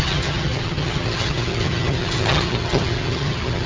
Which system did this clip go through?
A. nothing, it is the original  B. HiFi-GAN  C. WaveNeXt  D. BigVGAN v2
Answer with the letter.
B